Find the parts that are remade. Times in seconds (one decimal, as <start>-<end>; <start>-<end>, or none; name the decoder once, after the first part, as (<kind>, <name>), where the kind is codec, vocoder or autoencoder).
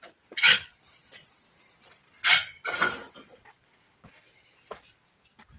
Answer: 0.0-2.0 (vocoder, Vocos)